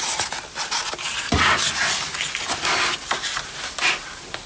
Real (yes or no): yes